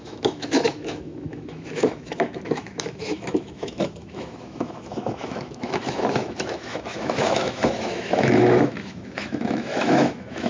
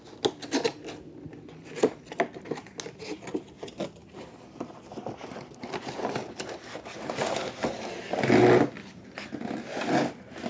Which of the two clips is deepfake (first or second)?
first